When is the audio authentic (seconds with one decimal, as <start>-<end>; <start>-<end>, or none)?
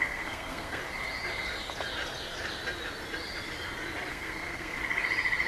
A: 0.8-4.1; 4.8-5.5